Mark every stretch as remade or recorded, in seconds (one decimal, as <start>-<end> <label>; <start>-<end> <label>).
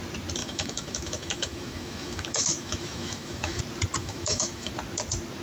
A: 0.0-0.4 recorded; 0.4-3.6 remade; 3.6-4.0 recorded; 4.0-4.7 remade; 4.7-5.4 recorded